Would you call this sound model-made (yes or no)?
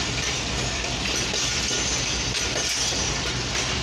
no